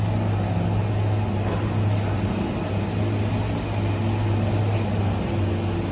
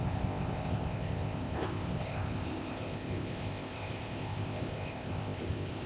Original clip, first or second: first